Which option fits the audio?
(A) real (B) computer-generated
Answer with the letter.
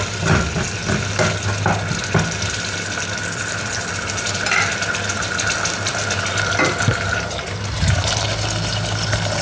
A